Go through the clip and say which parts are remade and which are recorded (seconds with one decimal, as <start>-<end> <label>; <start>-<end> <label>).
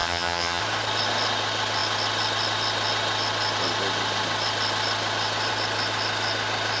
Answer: 0.0-0.6 remade; 0.6-6.8 recorded